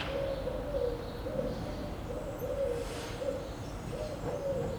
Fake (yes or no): no